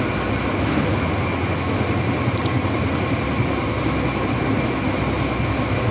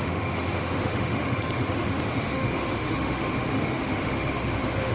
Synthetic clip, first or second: second